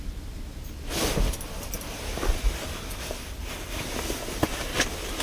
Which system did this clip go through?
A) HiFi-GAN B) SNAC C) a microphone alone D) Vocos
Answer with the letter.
C